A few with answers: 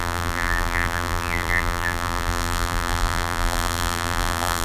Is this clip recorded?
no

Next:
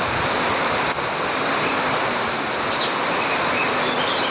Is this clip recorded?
yes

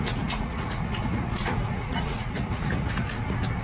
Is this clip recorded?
no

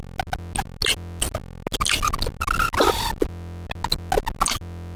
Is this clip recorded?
yes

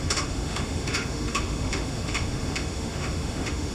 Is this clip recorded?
no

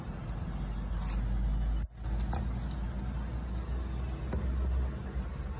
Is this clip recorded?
yes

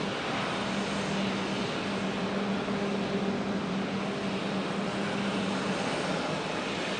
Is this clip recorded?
yes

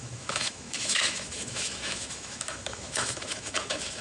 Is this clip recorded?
no